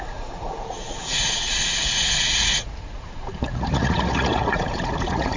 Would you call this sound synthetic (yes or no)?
yes